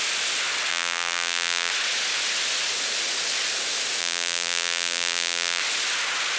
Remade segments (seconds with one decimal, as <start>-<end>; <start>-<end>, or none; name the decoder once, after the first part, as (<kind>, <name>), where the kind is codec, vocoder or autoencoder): 0.7-1.7 (vocoder, BigVGAN v2); 4.0-5.6